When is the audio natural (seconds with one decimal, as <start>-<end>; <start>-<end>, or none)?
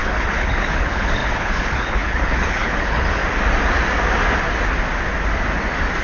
3.2-6.0